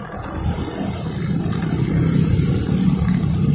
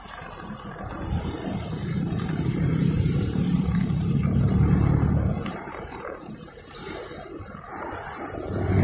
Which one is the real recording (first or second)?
first